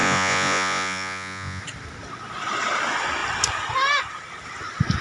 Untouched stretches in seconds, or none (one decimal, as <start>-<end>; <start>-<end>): 1.6-5.0